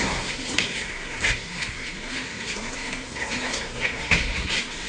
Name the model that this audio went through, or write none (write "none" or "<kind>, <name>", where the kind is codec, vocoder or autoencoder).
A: codec, SNAC